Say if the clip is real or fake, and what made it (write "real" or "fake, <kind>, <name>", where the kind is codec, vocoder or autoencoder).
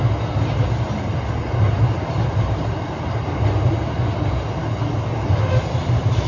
real